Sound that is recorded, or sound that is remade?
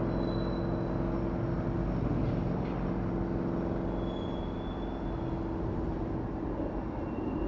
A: recorded